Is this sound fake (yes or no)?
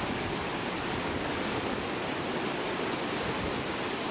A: no